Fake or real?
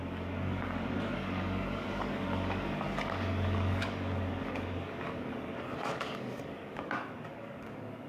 fake